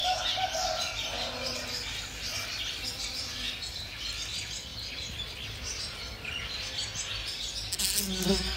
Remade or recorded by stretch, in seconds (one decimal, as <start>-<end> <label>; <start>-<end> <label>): 0.0-8.6 recorded

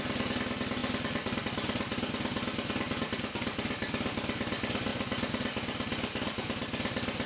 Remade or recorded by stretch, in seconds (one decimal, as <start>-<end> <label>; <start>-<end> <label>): 0.0-7.3 recorded

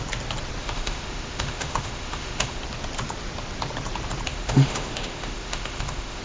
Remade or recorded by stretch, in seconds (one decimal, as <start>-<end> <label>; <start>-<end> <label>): 0.0-0.6 recorded; 0.6-2.6 remade; 2.6-4.3 recorded; 4.3-6.2 remade

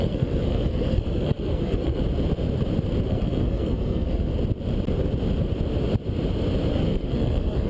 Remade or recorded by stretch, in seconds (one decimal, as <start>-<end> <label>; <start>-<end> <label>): 0.0-2.0 remade; 2.0-3.1 recorded; 3.1-4.3 remade; 4.3-6.7 recorded; 6.7-7.7 remade

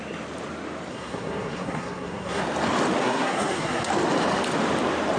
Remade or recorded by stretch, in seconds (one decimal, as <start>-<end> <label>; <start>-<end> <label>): 0.0-0.9 recorded; 0.9-2.4 remade; 2.4-3.0 recorded; 3.0-3.9 remade; 3.9-5.2 recorded

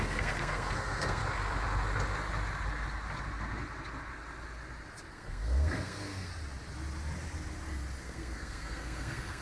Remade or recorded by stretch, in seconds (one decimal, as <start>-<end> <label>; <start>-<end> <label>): 0.0-1.2 remade; 1.2-5.1 recorded; 5.1-6.3 remade; 6.3-8.0 recorded; 8.0-9.4 remade

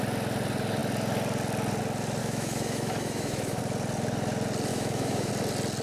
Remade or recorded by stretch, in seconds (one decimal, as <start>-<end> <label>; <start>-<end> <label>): 0.0-2.2 recorded; 2.2-3.6 remade; 3.6-4.7 recorded; 4.7-5.3 remade; 5.3-5.8 recorded

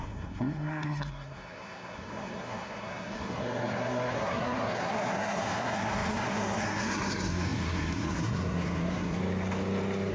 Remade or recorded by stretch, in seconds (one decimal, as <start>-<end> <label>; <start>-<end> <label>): 0.0-9.2 remade; 9.2-10.1 recorded